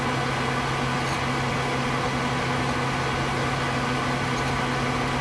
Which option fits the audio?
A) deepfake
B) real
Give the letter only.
B